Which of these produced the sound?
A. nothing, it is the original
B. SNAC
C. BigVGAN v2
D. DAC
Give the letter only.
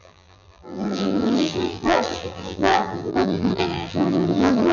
C